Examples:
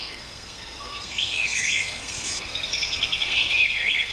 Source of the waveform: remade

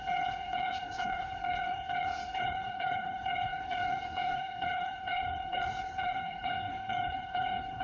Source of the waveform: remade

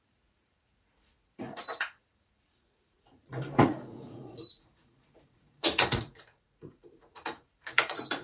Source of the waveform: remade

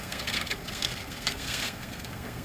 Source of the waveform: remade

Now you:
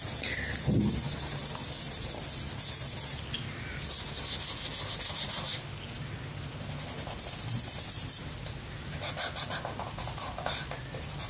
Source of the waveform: recorded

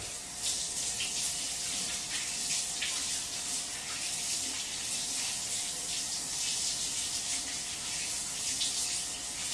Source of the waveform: recorded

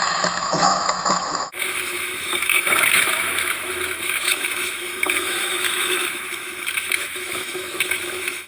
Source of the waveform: remade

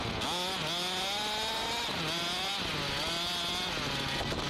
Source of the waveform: recorded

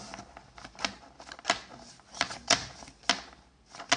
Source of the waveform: recorded